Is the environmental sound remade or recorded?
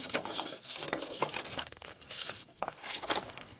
remade